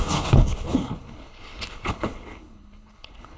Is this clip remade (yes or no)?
yes